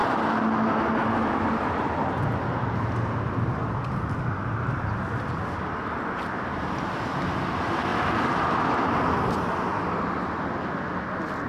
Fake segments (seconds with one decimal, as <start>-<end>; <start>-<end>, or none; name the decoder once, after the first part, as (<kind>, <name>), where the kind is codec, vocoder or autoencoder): none